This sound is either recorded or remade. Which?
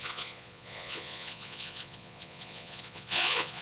remade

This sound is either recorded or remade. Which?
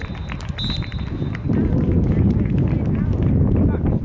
recorded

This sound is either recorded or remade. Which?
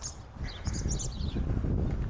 recorded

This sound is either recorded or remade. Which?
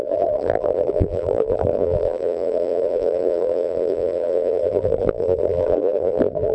remade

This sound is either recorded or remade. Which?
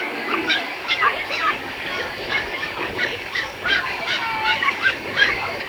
remade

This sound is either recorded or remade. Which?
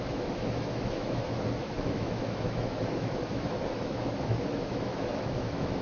remade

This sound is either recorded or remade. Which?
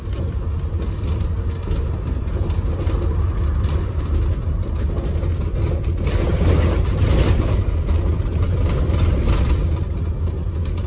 recorded